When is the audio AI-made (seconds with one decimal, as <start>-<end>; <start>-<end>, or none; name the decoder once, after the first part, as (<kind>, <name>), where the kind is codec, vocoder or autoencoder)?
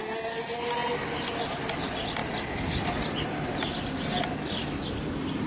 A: none